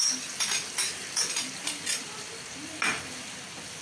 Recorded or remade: recorded